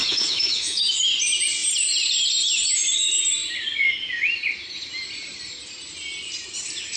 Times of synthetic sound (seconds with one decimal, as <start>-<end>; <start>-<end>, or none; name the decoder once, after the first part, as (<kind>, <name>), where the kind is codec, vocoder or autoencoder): 0.0-1.0 (autoencoder, DAC-VAE)